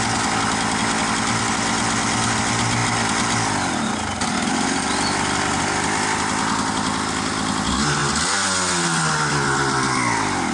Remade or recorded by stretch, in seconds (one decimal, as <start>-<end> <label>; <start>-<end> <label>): 0.0-10.5 recorded